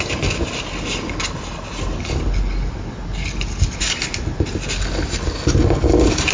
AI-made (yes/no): no